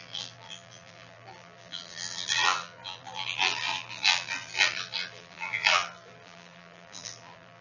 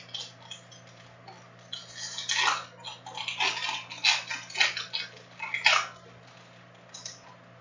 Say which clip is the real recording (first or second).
second